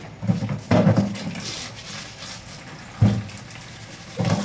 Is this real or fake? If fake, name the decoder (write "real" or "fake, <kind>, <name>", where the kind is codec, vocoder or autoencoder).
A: real